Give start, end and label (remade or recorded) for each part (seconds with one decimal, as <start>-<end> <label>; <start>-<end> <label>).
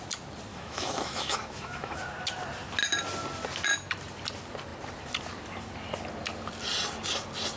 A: 0.0-0.5 recorded; 0.5-2.0 remade; 2.0-7.6 recorded